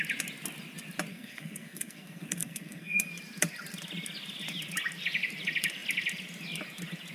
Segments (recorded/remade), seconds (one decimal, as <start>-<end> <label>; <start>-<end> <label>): 0.0-1.1 recorded; 1.1-3.1 remade; 3.1-7.1 recorded